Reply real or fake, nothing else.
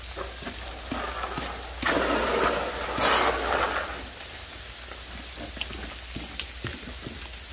real